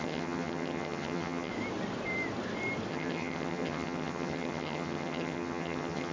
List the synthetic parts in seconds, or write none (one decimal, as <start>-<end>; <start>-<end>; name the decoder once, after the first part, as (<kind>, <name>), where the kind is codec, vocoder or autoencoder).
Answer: 0.0-1.5 (vocoder, HiFi-GAN); 2.9-6.1